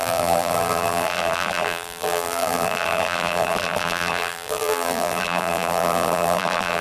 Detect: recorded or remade remade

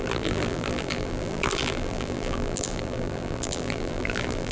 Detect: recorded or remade remade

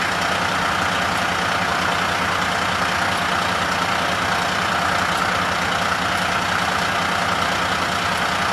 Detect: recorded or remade recorded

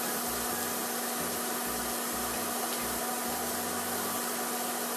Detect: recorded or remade recorded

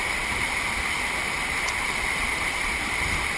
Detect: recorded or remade recorded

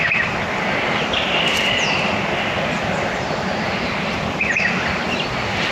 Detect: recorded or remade recorded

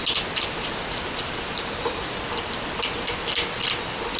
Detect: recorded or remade remade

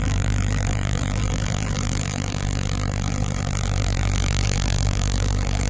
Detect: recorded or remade remade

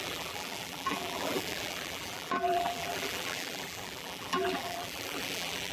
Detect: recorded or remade remade